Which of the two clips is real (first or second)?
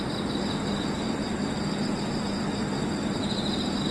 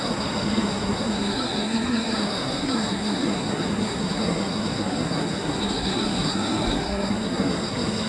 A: first